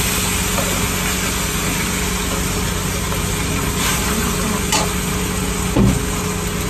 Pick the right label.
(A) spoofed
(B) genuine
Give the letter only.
B